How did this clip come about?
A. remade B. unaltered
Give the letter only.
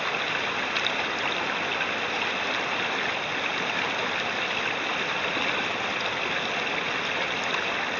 B